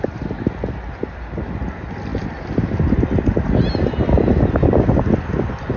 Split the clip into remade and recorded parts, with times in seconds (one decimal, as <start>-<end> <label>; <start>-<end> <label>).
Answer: 0.0-5.8 recorded